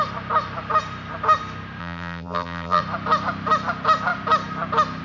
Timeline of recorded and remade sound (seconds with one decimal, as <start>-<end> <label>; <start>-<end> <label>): 0.0-1.8 recorded; 1.8-2.8 remade; 2.8-5.0 recorded